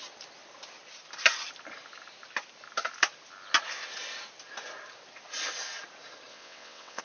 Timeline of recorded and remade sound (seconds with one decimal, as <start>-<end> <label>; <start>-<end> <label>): 0.0-6.3 recorded; 6.3-7.0 remade